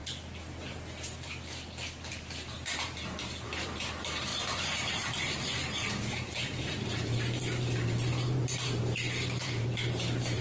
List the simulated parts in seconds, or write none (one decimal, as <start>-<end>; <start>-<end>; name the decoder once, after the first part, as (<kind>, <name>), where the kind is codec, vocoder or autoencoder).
2.1-10.4 (vocoder, BigVGAN v2)